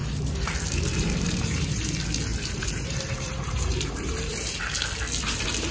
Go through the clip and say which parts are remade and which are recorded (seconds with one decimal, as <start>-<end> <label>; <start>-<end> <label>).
0.0-0.5 remade; 0.5-0.9 recorded; 0.9-1.9 remade; 1.9-2.3 recorded; 2.3-4.6 remade; 4.6-5.7 recorded